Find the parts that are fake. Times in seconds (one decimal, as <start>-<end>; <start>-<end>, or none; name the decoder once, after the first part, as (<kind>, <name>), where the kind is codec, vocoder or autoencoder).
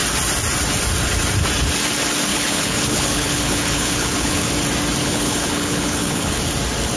2.3-4.5 (codec, HILCodec); 5.0-6.4